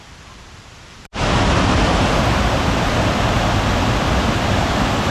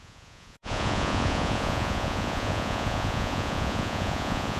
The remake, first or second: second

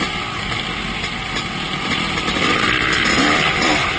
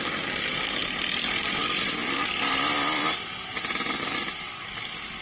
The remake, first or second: second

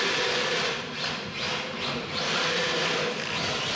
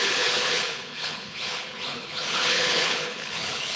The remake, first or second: second